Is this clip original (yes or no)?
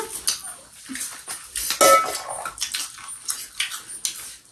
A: yes